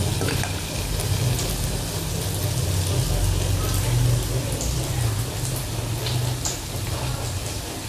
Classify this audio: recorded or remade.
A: recorded